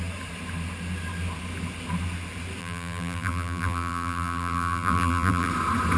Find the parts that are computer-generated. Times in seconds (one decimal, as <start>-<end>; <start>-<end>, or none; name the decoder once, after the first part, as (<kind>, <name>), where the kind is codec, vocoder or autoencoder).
2.6-5.5 (vocoder, BigVGAN v2)